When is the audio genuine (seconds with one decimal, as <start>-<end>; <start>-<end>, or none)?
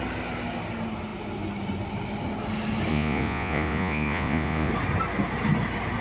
0.0-2.9; 4.7-6.0